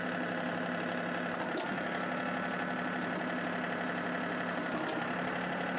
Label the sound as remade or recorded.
recorded